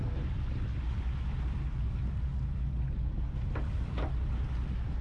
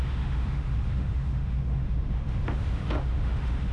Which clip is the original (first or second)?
first